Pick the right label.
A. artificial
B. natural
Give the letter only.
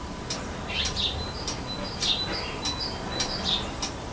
B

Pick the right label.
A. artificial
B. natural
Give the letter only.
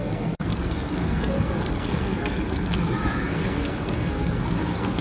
A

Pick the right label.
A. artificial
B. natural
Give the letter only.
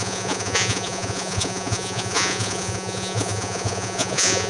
A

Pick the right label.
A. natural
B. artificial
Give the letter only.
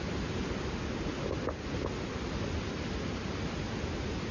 A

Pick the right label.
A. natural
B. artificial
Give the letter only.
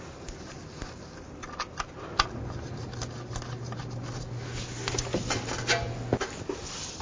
A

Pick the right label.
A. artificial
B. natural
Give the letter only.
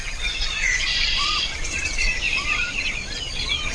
A